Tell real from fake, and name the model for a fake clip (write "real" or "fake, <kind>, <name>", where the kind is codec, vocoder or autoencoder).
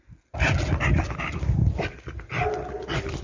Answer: real